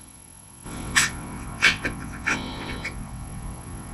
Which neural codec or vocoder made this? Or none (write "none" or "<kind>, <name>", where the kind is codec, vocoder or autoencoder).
vocoder, WaveNeXt